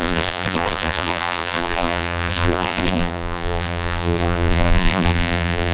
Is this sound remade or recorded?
remade